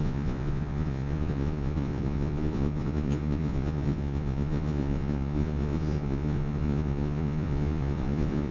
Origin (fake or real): fake